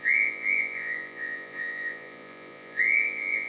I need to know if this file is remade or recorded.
remade